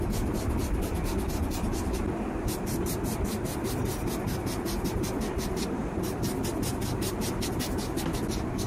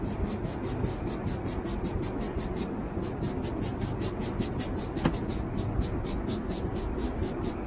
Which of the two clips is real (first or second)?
second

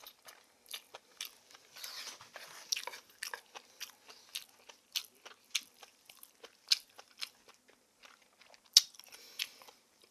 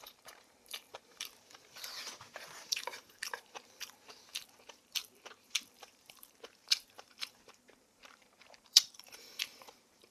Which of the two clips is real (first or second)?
first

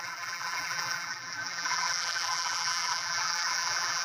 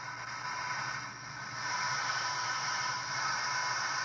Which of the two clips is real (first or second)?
second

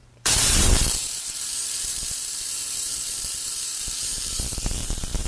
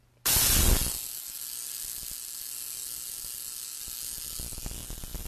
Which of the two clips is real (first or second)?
second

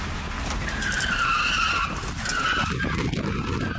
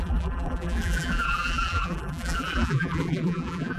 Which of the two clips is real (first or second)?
first